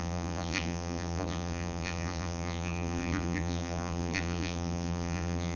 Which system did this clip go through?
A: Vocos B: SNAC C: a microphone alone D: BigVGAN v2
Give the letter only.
D